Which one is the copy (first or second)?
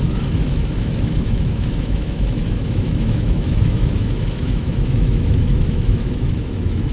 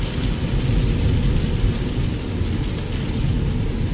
first